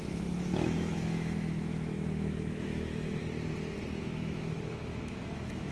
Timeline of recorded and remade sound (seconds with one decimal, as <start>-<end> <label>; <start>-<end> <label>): 0.0-3.2 remade; 3.2-4.0 recorded; 4.0-5.7 remade